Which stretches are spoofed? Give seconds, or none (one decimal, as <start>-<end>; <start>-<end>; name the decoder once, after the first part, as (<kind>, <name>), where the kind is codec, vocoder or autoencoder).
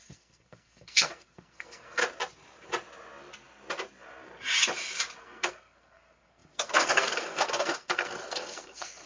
0.0-2.0 (codec, SNAC); 5.2-9.1